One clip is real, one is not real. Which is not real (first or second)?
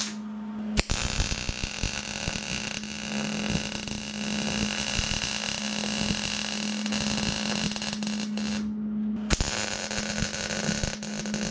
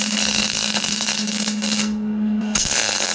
second